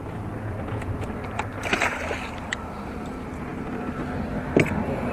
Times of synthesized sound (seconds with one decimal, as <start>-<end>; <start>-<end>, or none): 1.5-3.1